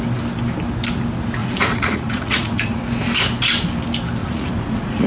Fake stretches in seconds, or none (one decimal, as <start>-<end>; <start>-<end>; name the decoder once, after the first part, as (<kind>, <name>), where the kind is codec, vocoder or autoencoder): 1.4-2.8 (vocoder, Vocos); 4.2-5.1